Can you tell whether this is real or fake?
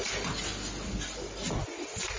real